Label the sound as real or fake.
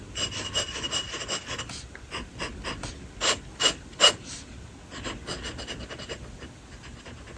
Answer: real